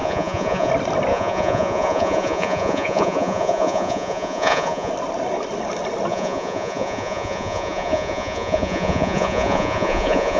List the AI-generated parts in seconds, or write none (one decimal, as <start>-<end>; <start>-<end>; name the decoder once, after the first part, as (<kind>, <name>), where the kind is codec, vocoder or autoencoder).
0.0-0.7 (vocoder, Vocos); 1.1-4.9; 6.1-10.4